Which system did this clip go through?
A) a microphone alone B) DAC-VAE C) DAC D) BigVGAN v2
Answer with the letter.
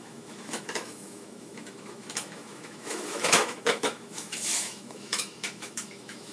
B